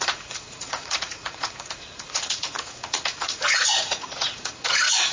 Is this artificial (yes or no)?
yes